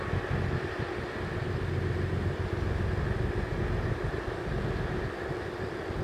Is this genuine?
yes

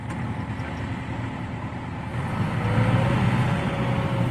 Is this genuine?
yes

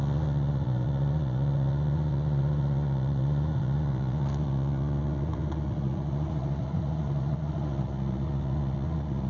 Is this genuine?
no